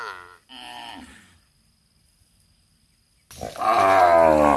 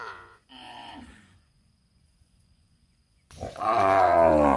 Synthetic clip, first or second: second